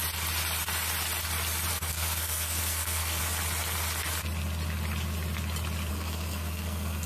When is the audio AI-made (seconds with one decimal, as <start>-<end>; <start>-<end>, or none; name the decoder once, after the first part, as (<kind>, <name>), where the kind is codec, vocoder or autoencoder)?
1.7-3.2 (codec, SNAC); 5.9-7.1